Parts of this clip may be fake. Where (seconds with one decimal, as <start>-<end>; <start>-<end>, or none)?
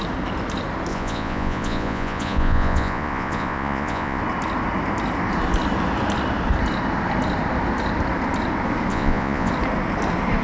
0.9-4.2; 8.9-9.5